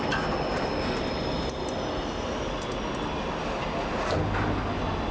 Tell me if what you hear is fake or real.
real